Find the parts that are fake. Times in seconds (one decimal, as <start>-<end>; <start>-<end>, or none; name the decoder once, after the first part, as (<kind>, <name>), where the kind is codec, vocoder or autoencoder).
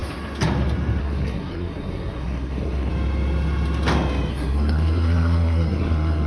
1.0-2.9 (codec, SNAC); 4.3-6.3